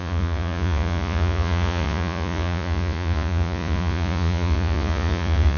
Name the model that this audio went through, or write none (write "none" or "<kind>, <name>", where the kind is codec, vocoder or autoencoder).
vocoder, Vocos